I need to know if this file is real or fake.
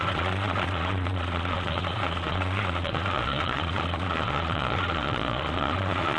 fake